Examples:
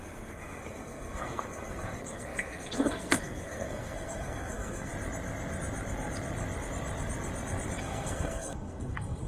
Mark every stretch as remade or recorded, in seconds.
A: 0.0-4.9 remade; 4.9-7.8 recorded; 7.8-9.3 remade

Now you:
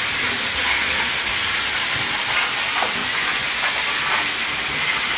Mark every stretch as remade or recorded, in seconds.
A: 0.0-3.0 recorded; 3.0-3.7 remade; 3.7-5.2 recorded

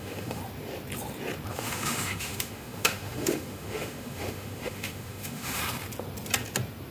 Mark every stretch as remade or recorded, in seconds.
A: 0.0-0.4 remade; 0.4-1.5 recorded; 1.5-5.6 remade; 5.6-6.9 recorded

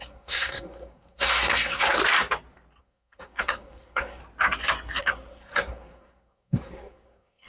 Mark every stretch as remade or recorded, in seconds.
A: 0.0-2.0 remade; 2.0-2.8 recorded; 2.8-4.2 remade; 4.2-5.0 recorded; 5.0-7.5 remade

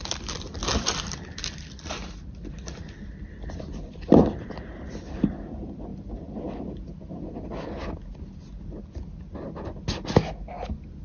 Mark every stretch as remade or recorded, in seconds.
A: 0.0-5.9 remade; 5.9-11.0 recorded

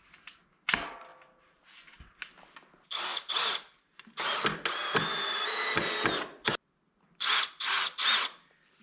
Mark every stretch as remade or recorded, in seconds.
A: 0.0-8.8 recorded

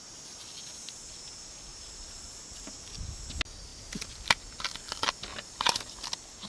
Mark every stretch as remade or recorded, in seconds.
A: 0.0-1.7 recorded; 1.7-2.7 remade; 2.7-5.3 recorded; 5.3-6.1 remade; 6.1-6.5 recorded